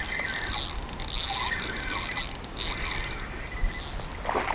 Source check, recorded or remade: recorded